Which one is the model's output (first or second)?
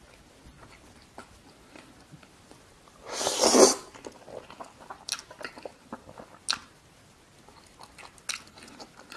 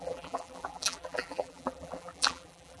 second